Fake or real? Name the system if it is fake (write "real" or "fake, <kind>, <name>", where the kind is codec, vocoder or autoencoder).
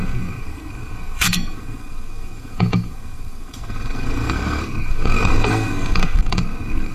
fake, codec, SNAC